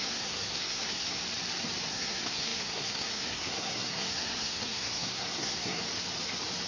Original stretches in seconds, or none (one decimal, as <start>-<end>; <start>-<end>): 1.2-1.9; 5.8-6.7

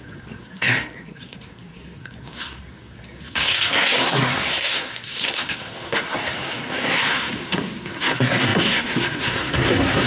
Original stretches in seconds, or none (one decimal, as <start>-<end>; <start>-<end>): none

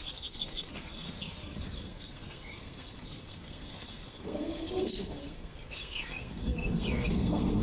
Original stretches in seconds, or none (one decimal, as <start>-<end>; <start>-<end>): none

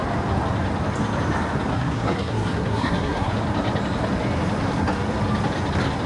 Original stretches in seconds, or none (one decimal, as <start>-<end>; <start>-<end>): 0.0-1.7; 3.3-6.1

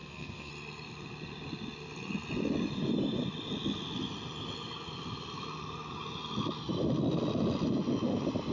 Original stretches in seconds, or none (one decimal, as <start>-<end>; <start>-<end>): 0.5-8.5

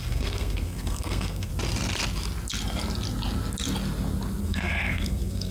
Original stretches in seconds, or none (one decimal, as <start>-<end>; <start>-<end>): 1.5-4.4

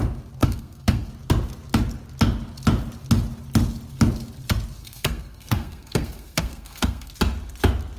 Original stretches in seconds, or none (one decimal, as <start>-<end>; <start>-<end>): 0.0-0.4; 1.1-4.8; 7.1-8.0

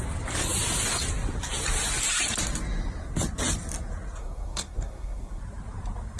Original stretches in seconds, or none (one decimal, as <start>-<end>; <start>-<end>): 0.0-4.2; 5.4-6.2